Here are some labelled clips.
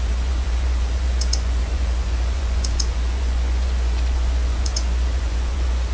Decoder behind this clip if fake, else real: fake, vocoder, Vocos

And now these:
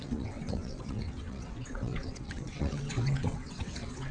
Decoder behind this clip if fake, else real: fake, vocoder, WaveNeXt